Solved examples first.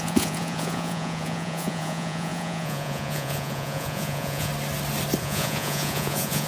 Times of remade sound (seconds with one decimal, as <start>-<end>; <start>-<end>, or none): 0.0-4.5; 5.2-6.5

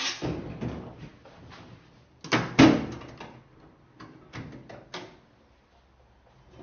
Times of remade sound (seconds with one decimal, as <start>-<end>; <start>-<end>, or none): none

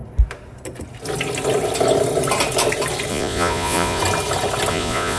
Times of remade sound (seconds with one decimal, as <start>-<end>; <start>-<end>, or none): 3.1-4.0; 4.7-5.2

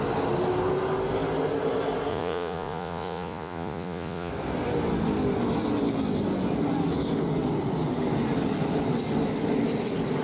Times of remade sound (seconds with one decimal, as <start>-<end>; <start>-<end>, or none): 2.1-4.3